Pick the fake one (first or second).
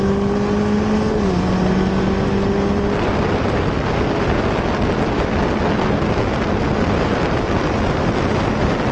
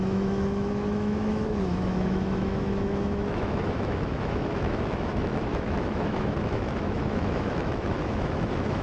second